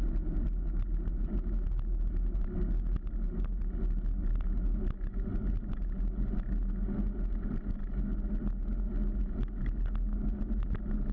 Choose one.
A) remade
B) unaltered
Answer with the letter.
B